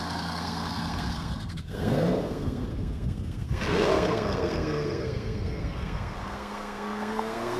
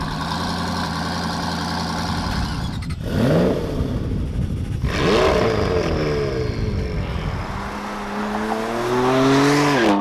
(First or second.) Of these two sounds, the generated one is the first